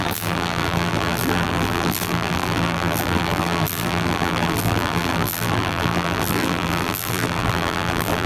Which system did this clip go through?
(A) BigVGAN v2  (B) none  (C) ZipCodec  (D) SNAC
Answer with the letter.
A